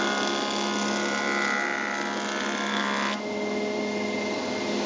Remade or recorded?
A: recorded